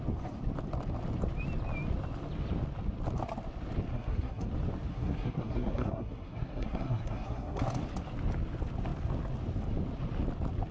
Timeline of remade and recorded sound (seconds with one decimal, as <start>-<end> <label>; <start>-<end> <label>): 0.0-3.9 recorded; 3.9-4.5 remade; 4.5-4.9 recorded; 4.9-7.6 remade; 7.6-10.7 recorded